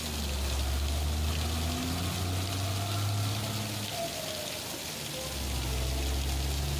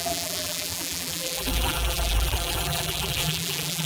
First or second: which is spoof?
second